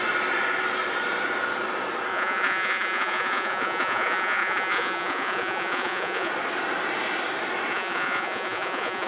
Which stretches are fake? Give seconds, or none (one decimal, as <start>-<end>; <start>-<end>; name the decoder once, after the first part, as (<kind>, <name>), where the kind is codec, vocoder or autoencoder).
2.1-6.3 (vocoder, Vocos); 7.7-9.1